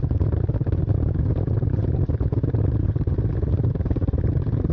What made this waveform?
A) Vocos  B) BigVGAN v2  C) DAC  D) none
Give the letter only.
B